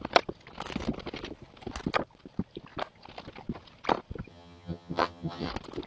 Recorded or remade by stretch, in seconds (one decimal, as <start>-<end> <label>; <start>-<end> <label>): 0.0-4.3 recorded; 4.3-5.5 remade; 5.5-5.9 recorded